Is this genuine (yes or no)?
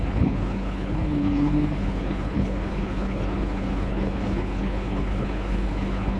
no